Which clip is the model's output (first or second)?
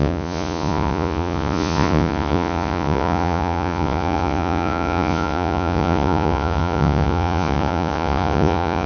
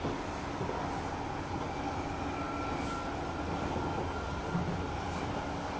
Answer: first